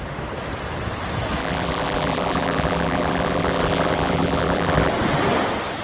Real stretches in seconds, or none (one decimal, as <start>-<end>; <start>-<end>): 0.0-1.4; 4.9-5.8